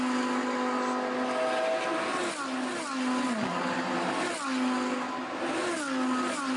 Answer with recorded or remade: recorded